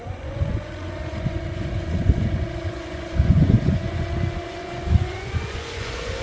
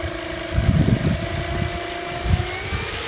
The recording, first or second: second